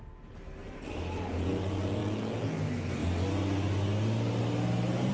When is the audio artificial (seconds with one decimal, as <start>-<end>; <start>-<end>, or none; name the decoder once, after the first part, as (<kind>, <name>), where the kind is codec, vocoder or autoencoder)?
none